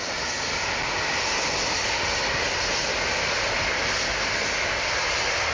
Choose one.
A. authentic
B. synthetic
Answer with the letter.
A